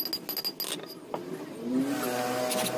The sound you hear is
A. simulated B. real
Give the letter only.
B